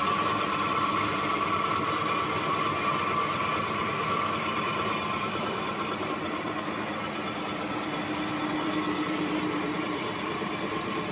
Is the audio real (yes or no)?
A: no